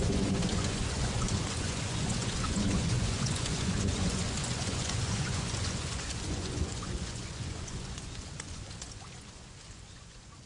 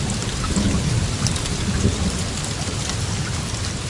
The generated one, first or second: first